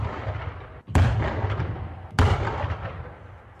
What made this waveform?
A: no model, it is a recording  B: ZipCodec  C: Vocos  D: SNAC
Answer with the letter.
A